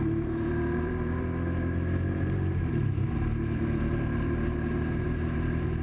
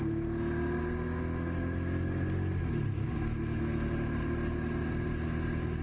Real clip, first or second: second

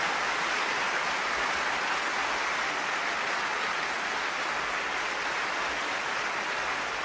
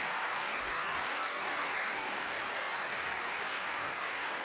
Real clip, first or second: first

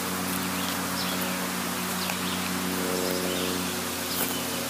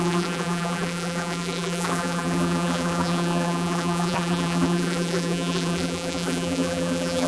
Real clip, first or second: first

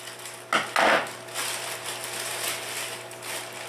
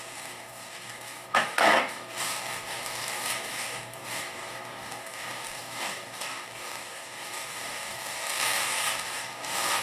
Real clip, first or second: first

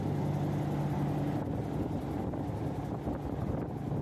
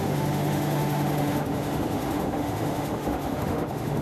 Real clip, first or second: first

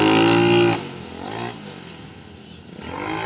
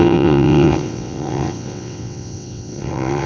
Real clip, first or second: first